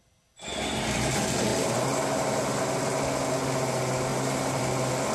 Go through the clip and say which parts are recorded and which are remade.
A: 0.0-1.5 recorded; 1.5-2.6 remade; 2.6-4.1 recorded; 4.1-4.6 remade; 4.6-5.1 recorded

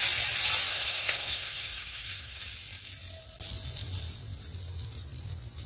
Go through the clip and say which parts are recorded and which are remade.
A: 0.0-0.7 recorded; 0.7-2.4 remade; 2.4-5.7 recorded

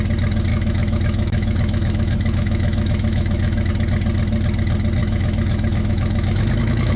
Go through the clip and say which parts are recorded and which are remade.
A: 0.0-0.5 recorded; 0.5-3.7 remade; 3.7-5.0 recorded; 5.0-7.0 remade

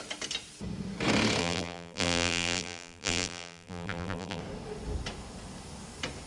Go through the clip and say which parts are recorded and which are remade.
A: 0.0-1.4 recorded; 1.4-4.4 remade; 4.4-6.3 recorded

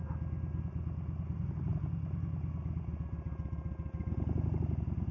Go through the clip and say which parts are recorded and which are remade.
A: 0.0-5.1 recorded